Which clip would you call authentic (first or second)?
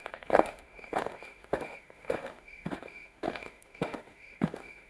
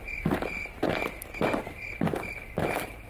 second